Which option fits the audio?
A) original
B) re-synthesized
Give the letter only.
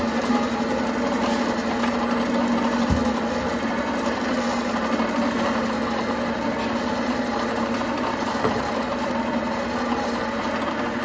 A